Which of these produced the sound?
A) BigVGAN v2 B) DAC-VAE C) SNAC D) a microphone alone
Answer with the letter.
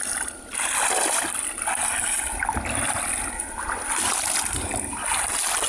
D